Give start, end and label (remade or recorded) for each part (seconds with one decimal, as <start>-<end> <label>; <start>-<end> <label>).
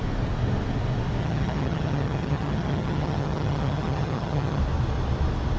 0.0-1.2 recorded; 1.2-4.6 remade; 4.6-5.6 recorded